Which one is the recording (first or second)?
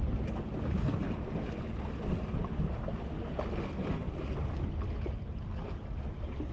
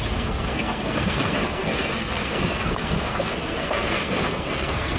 first